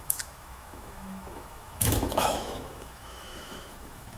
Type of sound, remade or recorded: remade